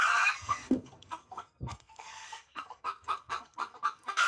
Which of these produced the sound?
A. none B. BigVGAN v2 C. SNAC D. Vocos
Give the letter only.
C